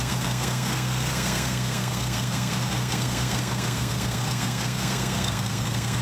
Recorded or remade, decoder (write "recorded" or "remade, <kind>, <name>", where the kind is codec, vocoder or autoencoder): remade, codec, SNAC